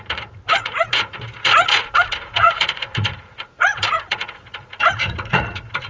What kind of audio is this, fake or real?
fake